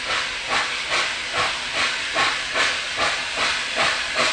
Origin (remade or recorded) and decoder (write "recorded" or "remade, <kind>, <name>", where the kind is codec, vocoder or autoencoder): recorded